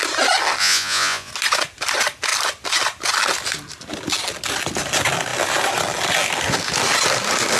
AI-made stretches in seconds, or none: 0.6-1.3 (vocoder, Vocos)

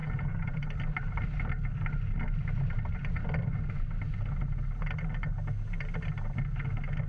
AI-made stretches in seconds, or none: 0.0-0.6 (vocoder, Vocos)

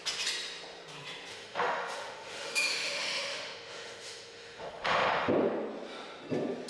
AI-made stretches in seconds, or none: 1.3-5.3 (autoencoder, DAC-VAE)

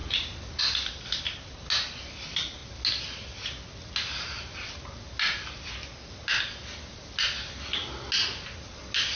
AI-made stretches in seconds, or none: none